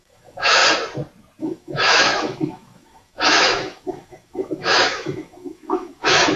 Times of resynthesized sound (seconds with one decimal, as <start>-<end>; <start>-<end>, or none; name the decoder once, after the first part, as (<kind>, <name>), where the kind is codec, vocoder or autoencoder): 0.0-0.6 (autoencoder, DAC-VAE); 1.4-6.4